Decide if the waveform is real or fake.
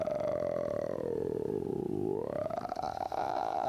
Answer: fake